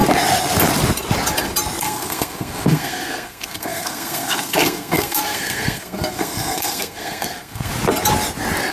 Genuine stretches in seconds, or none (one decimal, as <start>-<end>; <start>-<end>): 0.0-1.8; 7.7-8.7